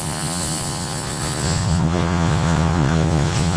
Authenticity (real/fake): fake